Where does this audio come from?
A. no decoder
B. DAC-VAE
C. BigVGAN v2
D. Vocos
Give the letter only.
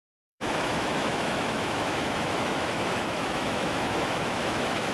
B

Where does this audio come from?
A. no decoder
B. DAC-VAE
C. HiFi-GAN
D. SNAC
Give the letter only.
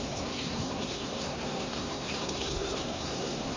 D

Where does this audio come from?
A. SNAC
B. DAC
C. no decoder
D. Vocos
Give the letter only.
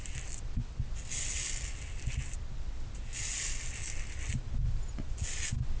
C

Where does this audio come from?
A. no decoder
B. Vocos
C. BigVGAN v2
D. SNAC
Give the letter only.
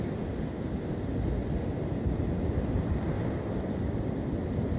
A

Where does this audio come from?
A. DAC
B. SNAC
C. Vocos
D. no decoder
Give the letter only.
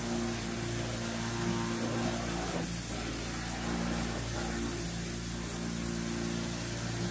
D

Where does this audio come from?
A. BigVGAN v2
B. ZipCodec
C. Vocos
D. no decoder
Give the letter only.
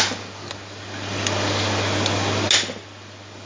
D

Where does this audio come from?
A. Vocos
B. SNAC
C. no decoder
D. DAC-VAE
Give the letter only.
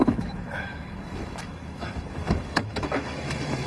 D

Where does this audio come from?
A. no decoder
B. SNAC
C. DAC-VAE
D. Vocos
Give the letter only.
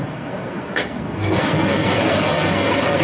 B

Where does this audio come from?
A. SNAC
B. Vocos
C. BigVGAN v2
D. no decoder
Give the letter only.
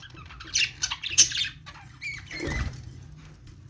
C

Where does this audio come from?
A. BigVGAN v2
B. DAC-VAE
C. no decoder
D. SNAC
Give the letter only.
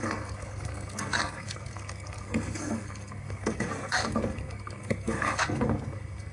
D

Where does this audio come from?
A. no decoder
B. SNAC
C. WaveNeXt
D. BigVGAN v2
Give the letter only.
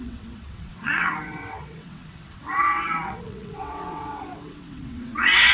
C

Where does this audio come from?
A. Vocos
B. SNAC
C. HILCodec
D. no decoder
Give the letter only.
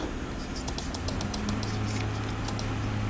D